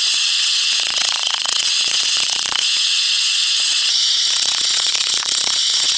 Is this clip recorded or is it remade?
remade